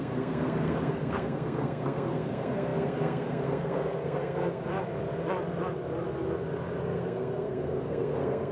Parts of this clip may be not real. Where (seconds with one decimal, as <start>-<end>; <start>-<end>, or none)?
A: 0.0-4.7; 6.8-8.5